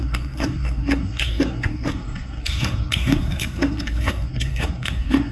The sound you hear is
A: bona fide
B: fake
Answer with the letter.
B